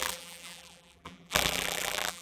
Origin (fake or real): fake